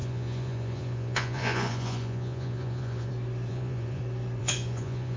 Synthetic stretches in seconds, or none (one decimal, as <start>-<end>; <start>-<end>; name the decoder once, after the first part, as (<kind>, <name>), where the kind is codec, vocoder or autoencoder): 0.0-3.1 (vocoder, Vocos); 3.5-4.0; 4.4-5.2